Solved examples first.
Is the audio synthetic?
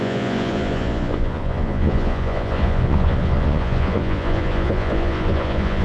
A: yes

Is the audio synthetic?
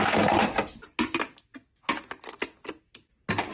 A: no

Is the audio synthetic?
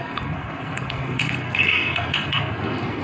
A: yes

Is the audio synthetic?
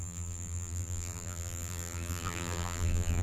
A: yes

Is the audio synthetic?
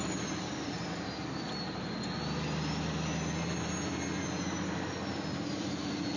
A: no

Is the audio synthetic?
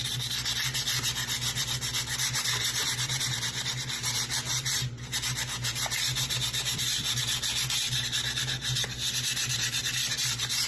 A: no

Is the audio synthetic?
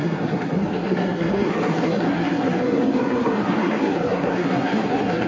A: yes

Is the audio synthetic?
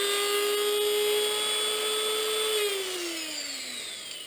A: no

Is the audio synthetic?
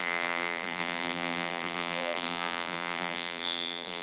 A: yes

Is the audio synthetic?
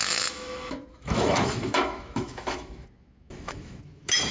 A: yes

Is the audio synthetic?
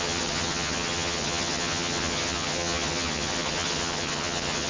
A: yes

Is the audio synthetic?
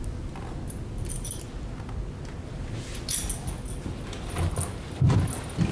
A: no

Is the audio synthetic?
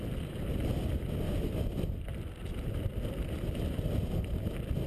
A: yes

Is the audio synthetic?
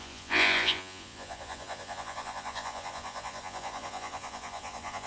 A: yes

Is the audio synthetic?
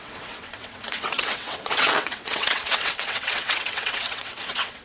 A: yes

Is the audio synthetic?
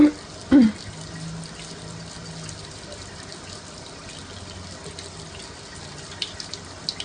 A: no